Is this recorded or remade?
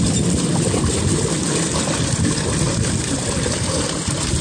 recorded